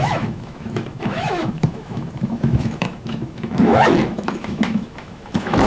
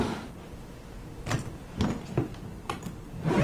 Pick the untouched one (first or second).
second